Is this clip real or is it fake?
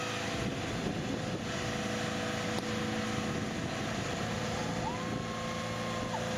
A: real